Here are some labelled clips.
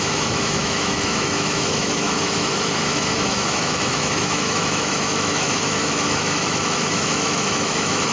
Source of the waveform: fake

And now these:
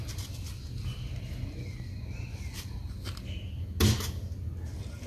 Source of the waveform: real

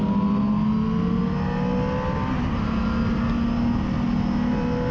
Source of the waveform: real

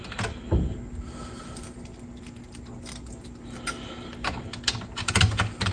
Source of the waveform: real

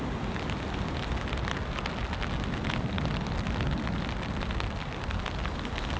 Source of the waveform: real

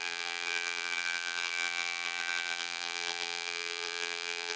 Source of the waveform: fake